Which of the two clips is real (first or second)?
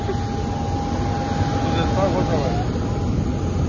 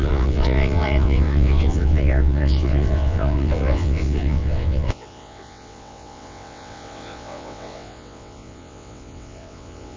first